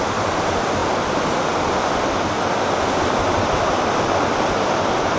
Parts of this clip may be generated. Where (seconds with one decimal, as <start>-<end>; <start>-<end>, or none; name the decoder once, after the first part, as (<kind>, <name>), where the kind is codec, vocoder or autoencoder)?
none